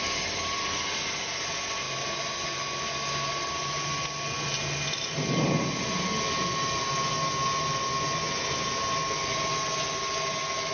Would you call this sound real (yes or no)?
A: yes